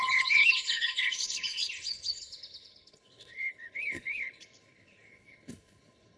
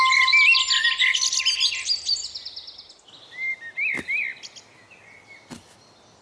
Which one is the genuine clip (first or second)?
second